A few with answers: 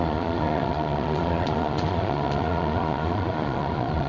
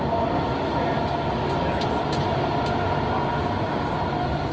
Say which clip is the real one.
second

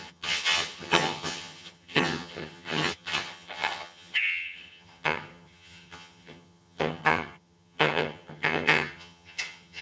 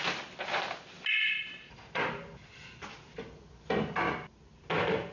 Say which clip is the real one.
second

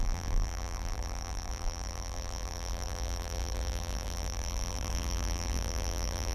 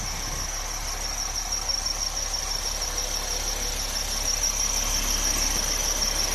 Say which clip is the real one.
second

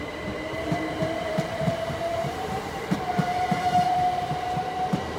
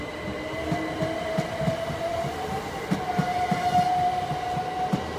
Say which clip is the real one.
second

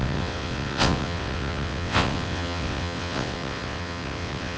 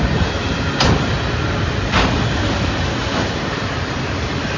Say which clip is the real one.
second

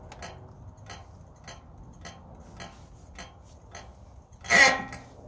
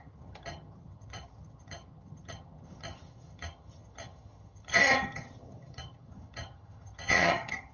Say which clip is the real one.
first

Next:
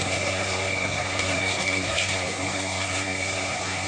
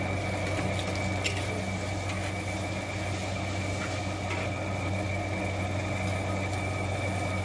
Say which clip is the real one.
second